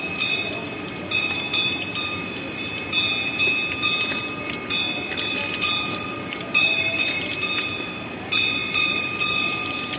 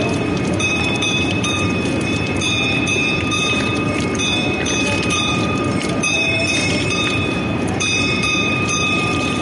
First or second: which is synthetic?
second